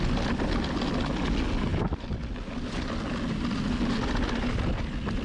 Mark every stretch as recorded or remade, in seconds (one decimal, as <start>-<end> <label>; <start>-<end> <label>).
0.0-5.2 recorded

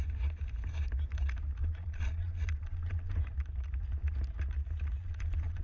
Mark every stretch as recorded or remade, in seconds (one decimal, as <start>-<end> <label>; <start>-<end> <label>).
0.0-1.6 recorded; 1.6-3.2 remade; 3.2-5.0 recorded; 5.0-5.6 remade

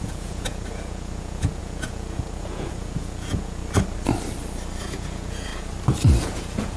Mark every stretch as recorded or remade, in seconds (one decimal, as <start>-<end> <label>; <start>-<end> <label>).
0.0-3.6 remade; 3.6-4.8 recorded; 4.8-5.5 remade; 5.5-6.2 recorded; 6.2-6.8 remade

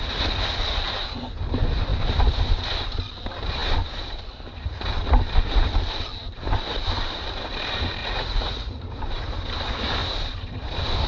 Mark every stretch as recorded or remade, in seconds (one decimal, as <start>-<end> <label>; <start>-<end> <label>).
0.0-8.0 recorded; 8.0-8.8 remade; 8.8-11.1 recorded

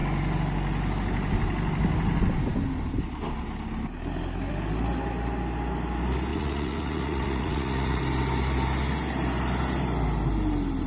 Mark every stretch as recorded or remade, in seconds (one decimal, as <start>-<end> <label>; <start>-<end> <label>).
0.0-6.3 recorded; 6.3-8.0 remade; 8.0-10.9 recorded